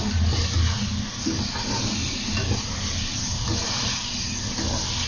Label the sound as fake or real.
real